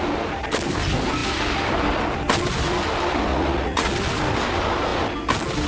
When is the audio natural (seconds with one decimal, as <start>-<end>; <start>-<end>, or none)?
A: 0.0-3.3; 3.9-5.7